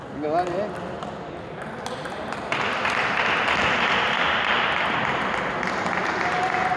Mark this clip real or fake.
real